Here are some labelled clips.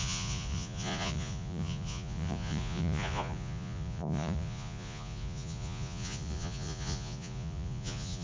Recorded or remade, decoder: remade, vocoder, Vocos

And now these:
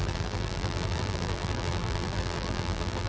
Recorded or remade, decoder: remade, vocoder, BigVGAN v2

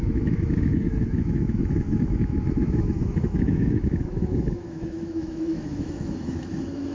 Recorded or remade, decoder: remade, autoencoder, DAC-VAE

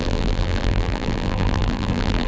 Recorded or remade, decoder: remade, vocoder, BigVGAN v2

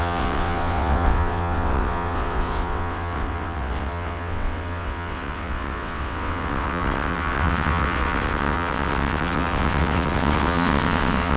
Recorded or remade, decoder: remade, vocoder, WaveNeXt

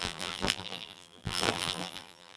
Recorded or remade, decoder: remade, vocoder, BigVGAN v2